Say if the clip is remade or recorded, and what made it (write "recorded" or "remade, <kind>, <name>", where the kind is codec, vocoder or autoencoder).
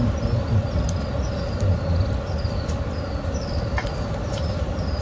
recorded